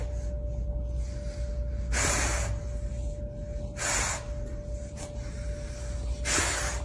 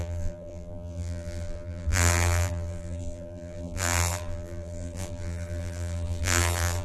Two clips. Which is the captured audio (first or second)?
first